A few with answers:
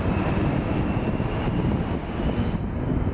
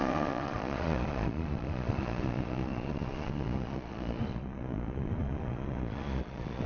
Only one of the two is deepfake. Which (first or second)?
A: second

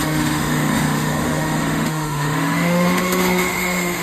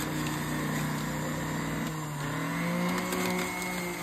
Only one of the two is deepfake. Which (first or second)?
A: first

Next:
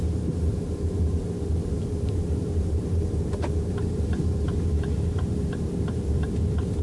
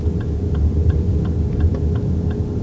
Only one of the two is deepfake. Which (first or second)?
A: first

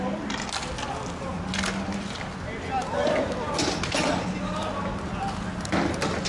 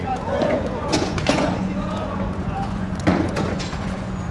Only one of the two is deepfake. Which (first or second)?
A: second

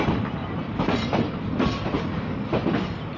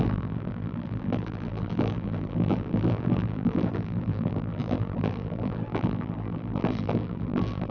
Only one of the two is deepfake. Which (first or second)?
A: second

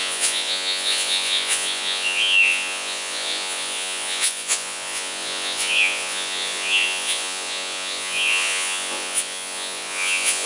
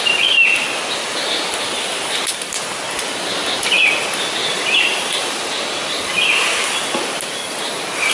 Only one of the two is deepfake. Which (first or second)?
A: first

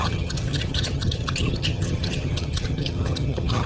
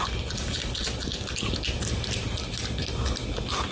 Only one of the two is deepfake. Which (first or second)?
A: first